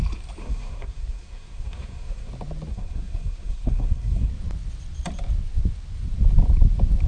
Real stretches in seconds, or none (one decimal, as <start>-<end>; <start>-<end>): 0.0-0.4; 2.3-2.7; 4.3-7.1